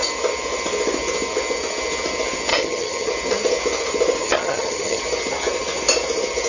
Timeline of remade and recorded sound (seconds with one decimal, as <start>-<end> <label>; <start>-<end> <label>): 0.0-2.5 recorded; 2.5-3.1 remade; 3.1-4.2 recorded; 4.2-5.0 remade; 5.0-6.5 recorded